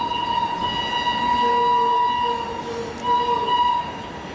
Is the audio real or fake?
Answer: real